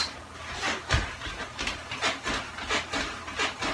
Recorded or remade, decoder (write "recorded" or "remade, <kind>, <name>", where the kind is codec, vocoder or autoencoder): recorded